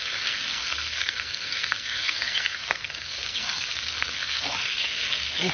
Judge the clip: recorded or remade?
remade